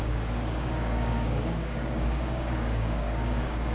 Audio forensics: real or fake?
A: fake